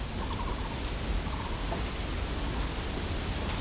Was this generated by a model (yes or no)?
no